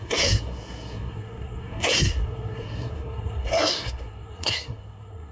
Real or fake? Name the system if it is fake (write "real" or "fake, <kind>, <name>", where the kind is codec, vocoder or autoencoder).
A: fake, codec, SNAC